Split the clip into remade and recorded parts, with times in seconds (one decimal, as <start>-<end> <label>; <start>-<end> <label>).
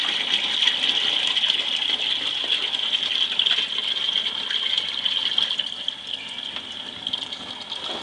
0.0-5.2 recorded; 5.2-6.9 remade; 6.9-8.0 recorded